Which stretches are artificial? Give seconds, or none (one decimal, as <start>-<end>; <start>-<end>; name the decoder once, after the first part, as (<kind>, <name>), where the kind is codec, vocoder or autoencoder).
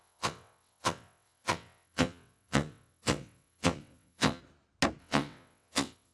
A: 0.0-4.4 (vocoder, WaveNeXt); 5.0-6.1